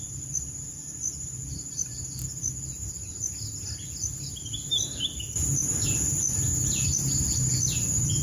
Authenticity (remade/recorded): recorded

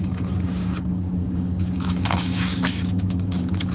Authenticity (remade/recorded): remade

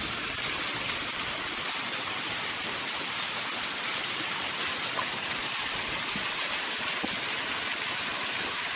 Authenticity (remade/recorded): recorded